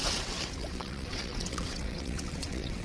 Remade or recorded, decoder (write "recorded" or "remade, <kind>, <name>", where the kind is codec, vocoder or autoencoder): remade, vocoder, WaveNeXt